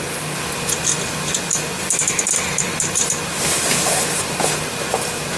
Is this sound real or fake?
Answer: real